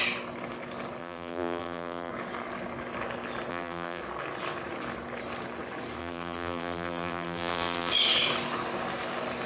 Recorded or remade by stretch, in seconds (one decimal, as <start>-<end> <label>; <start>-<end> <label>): 0.0-1.0 recorded; 1.0-2.1 remade; 2.1-3.5 recorded; 3.5-4.0 remade; 4.0-6.0 recorded; 6.0-7.9 remade; 7.9-9.5 recorded